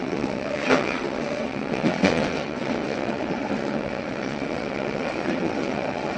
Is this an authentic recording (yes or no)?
no